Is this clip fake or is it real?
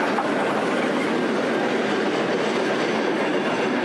fake